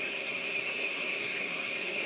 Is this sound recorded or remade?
remade